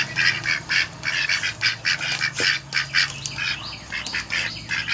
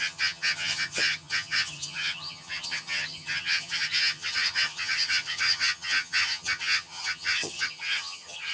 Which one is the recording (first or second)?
first